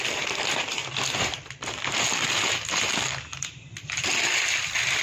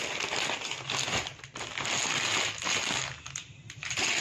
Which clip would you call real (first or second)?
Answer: second